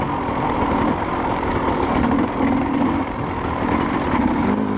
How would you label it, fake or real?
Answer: fake